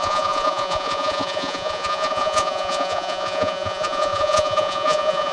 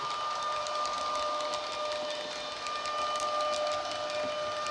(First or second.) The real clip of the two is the second